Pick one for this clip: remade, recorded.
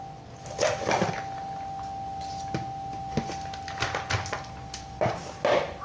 recorded